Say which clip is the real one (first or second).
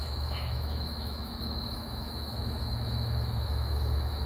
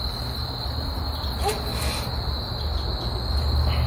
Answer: second